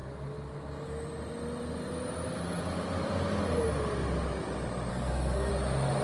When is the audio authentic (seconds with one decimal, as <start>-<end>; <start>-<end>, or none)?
0.0-4.9; 5.5-6.0